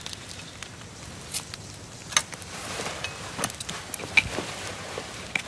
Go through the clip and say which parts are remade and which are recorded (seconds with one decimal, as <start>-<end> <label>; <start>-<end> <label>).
0.0-5.5 recorded